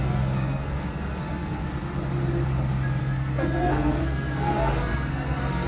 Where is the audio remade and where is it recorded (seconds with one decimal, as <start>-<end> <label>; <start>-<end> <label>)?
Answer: 0.0-1.6 remade; 1.6-3.0 recorded; 3.0-5.7 remade